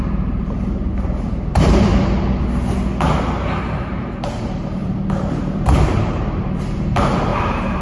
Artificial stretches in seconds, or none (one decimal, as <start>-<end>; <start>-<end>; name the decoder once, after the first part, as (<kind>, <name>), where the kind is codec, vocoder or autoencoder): 0.0-1.9 (vocoder, BigVGAN v2); 4.2-7.8